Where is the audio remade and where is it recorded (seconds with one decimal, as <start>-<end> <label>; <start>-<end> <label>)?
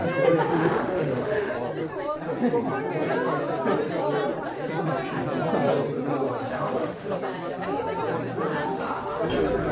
0.0-0.5 recorded; 0.5-1.5 remade; 1.5-6.5 recorded; 6.5-7.2 remade; 7.2-8.6 recorded; 8.6-9.2 remade; 9.2-9.7 recorded